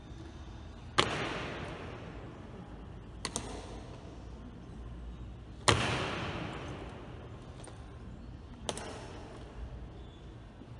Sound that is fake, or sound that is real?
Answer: real